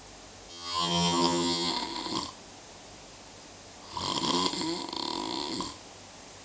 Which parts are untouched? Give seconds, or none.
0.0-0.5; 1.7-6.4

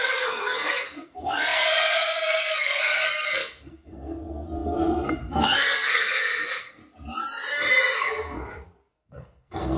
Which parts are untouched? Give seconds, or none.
6.8-8.0

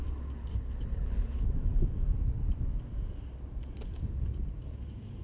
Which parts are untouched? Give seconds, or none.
0.0-0.5; 1.5-5.2

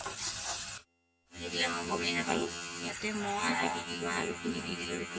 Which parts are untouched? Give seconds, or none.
0.0-0.8; 2.9-3.4

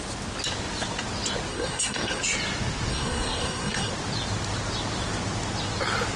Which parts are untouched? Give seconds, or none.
0.0-1.5; 2.2-2.9; 3.9-6.2

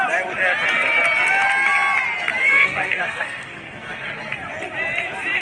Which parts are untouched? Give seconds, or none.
0.0-2.4; 4.2-5.4

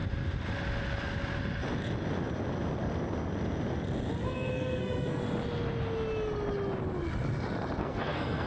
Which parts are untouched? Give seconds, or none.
0.0-4.2; 5.2-7.8